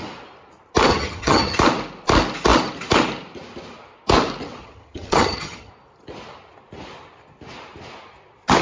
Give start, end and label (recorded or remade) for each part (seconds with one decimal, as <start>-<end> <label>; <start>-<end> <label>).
0.0-0.9 recorded; 0.9-1.6 remade; 1.6-4.6 recorded; 4.6-5.7 remade; 5.7-8.6 recorded